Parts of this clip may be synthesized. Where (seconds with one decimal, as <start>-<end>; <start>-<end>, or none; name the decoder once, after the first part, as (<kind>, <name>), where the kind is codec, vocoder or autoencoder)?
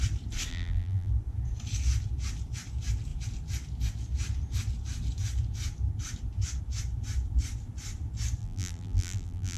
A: 0.5-1.1 (vocoder, BigVGAN v2); 8.4-9.6